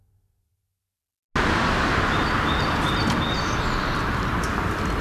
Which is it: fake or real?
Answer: real